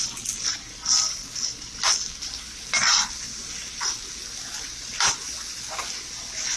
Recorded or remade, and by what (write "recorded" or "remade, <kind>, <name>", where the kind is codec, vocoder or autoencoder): recorded